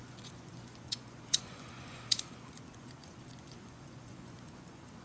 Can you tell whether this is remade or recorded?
remade